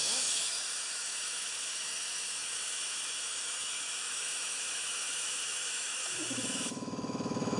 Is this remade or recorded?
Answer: remade